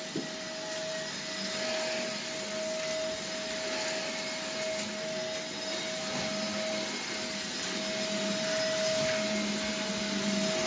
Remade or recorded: recorded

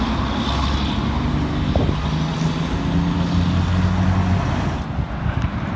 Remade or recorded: recorded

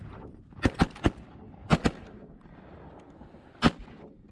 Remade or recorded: recorded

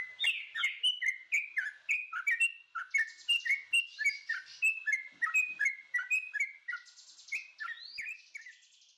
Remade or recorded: recorded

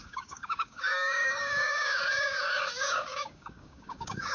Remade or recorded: remade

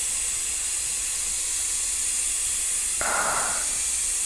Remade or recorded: recorded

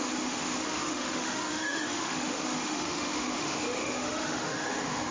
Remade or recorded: remade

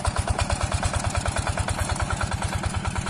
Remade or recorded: recorded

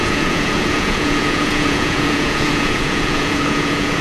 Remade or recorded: remade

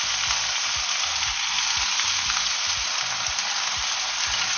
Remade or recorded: recorded